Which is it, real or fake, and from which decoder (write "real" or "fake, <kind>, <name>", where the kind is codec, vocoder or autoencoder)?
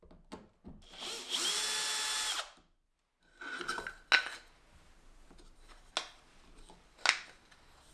real